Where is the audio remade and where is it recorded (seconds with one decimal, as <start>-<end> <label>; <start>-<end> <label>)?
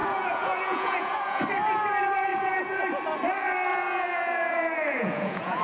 0.0-1.4 remade; 1.4-2.3 recorded; 2.3-2.8 remade; 2.8-3.7 recorded; 3.7-5.6 remade